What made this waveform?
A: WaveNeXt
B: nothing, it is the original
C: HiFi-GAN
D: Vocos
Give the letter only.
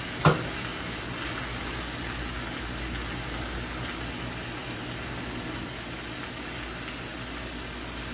B